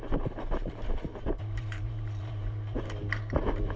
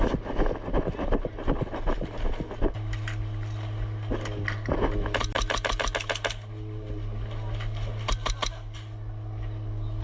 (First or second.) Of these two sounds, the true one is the second